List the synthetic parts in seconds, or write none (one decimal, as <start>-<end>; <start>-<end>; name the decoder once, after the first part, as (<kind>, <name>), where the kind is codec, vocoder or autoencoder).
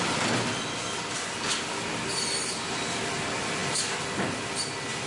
none